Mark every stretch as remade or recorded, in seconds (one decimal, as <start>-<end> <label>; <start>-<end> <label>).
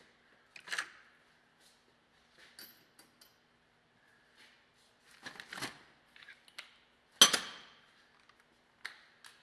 0.0-9.4 recorded